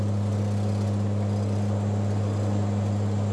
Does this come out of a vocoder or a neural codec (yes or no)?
no